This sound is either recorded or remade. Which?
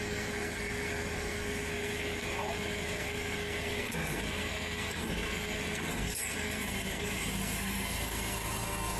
remade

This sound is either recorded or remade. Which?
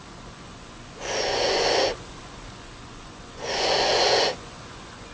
remade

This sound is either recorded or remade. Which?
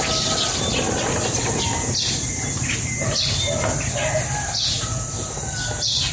recorded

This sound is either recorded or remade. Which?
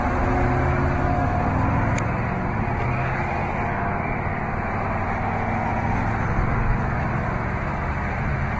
recorded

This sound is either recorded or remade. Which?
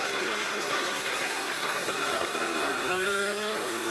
remade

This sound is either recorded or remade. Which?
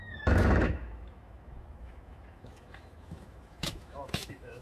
remade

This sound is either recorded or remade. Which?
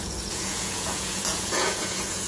remade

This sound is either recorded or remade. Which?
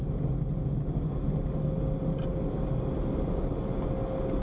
recorded